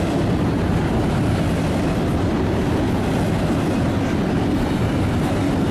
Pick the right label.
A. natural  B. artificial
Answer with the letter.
A